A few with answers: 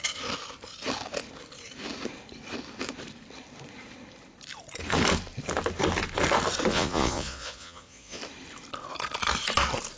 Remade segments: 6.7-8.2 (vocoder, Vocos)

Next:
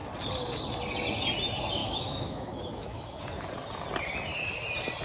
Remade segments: 1.8-3.2 (autoencoder, DAC-VAE)

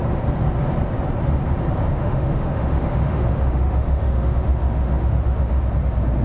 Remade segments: 1.9-5.6 (autoencoder, DAC-VAE)

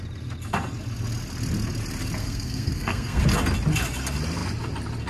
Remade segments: 2.2-3.2 (codec, SNAC)